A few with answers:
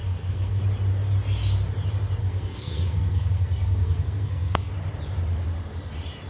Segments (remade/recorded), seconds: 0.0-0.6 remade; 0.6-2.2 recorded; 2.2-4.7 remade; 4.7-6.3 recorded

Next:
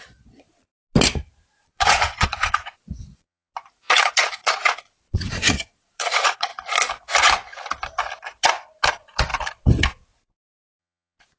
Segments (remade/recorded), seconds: 0.0-0.7 remade; 0.7-1.5 recorded; 1.5-3.5 remade; 3.5-4.0 recorded; 4.0-6.5 remade; 6.5-8.9 recorded; 8.9-9.3 remade; 9.3-10.8 recorded; 10.8-11.4 remade

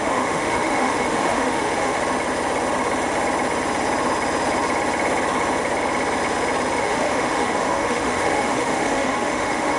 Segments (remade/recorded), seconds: 0.0-2.0 remade; 2.0-6.8 recorded; 6.8-9.8 remade